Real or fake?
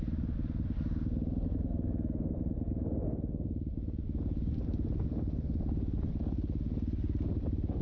real